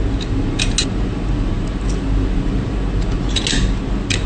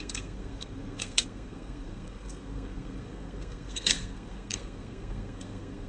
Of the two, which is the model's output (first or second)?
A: second